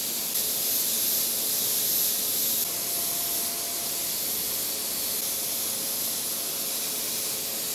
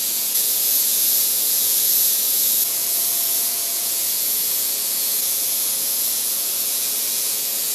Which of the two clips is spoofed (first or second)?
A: second